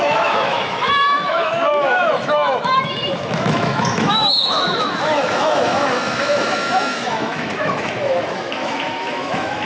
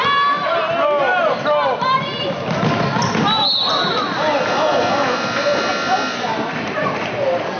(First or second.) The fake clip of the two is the first